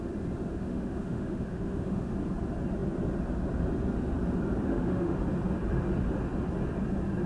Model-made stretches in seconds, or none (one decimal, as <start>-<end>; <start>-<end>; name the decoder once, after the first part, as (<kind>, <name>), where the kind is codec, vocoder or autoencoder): 0.5-2.1 (autoencoder, DAC-VAE); 4.7-5.2